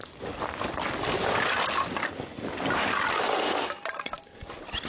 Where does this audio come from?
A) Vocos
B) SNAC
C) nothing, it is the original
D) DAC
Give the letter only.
C